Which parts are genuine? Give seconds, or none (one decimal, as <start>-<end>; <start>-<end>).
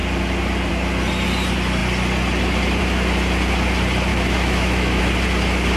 0.0-4.1; 5.0-5.8